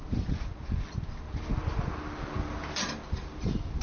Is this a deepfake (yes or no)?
no